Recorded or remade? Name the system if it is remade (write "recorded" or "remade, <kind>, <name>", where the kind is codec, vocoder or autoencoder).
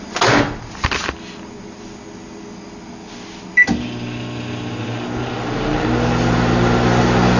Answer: recorded